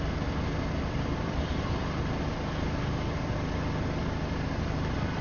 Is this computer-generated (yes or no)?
yes